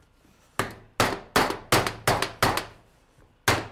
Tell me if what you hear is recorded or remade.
recorded